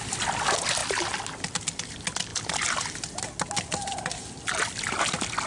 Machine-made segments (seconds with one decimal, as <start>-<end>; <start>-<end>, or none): none